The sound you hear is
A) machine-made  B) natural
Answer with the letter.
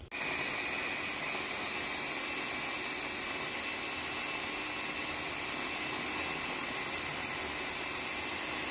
B